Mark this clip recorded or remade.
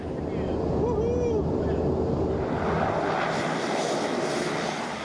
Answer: recorded